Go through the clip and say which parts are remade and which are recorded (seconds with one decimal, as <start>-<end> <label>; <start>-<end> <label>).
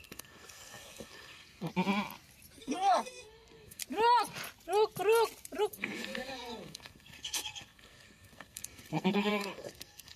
0.0-1.7 remade; 1.7-2.6 recorded; 2.6-3.8 remade; 3.8-5.7 recorded; 5.7-10.2 remade